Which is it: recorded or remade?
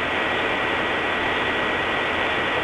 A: recorded